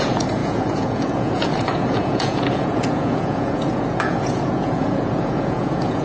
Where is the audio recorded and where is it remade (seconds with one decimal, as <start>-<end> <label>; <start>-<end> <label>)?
0.0-6.0 remade